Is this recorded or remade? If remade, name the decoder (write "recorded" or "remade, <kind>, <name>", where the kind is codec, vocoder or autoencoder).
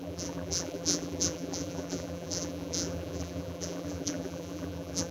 remade, vocoder, BigVGAN v2